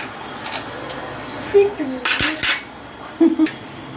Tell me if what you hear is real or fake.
real